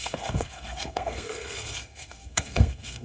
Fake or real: fake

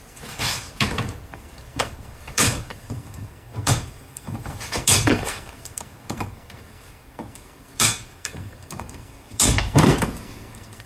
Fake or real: fake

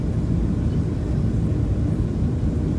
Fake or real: real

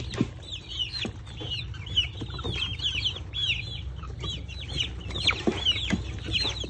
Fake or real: real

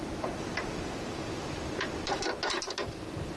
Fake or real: real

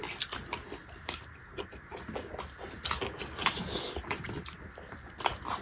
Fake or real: real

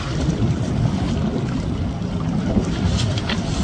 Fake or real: real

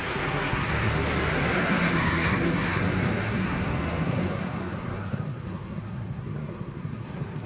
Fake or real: fake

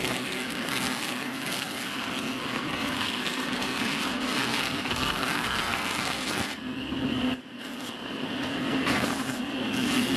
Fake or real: fake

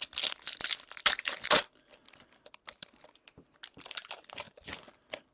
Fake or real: real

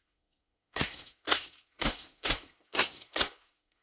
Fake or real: fake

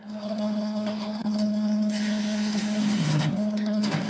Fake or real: fake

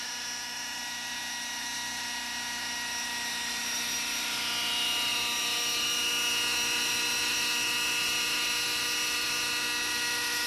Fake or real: real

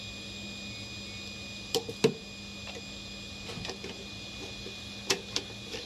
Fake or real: real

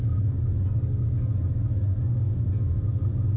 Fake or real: real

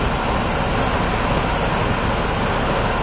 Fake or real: real